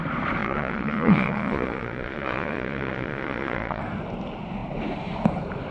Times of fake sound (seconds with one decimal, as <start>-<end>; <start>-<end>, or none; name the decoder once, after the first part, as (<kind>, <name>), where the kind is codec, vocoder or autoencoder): 0.4-3.8 (vocoder, Vocos)